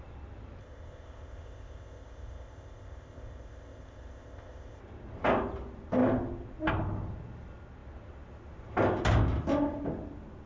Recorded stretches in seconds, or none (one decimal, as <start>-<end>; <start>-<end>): 0.0-0.6; 4.8-10.5